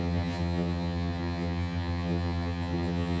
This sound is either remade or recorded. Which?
remade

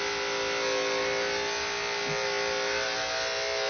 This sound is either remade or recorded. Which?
recorded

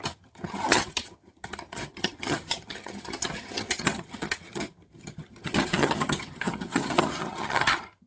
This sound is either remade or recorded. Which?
remade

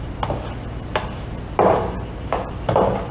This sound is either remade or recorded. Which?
recorded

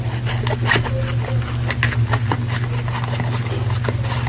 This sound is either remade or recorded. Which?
recorded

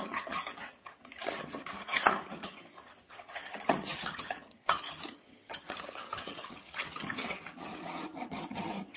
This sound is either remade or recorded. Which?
remade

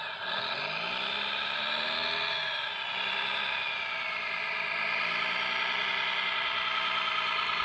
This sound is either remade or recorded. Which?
recorded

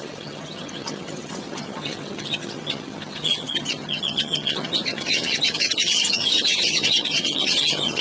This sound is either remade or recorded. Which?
remade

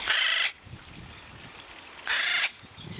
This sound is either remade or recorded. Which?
recorded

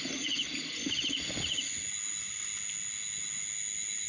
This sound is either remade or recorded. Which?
recorded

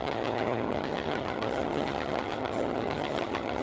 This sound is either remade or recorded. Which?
remade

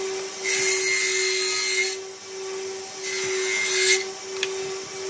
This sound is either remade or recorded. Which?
recorded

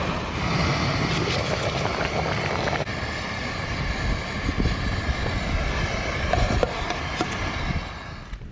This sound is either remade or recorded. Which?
recorded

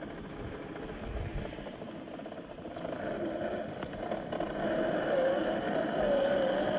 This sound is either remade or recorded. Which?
recorded